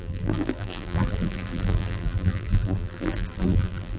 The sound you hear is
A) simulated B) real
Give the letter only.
A